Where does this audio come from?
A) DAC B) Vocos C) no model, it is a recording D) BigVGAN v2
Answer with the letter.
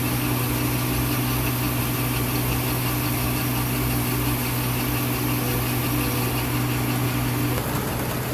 C